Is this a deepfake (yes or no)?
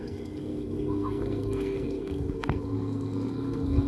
yes